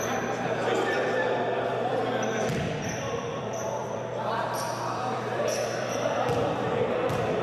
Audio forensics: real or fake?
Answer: fake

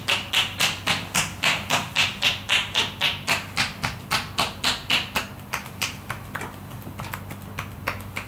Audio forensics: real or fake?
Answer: real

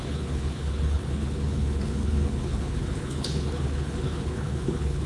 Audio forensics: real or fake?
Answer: fake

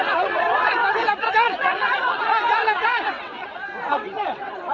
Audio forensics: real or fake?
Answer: fake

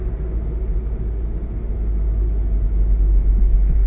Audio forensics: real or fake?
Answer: real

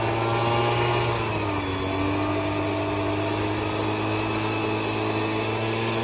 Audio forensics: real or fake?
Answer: real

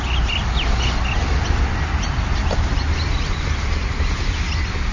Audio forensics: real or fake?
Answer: real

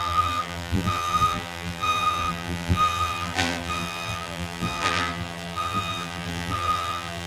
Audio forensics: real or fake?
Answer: fake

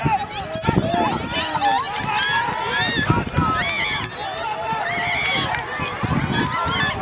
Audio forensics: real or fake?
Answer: real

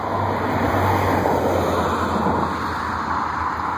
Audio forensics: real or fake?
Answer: real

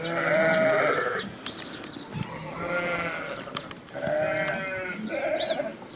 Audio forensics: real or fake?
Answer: real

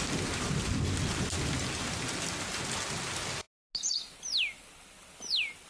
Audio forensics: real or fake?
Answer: real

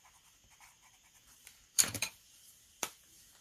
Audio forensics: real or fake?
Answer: fake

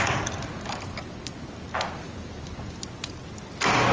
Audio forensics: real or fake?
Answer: real